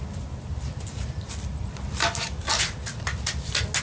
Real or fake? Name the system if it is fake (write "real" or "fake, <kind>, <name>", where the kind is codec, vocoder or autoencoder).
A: real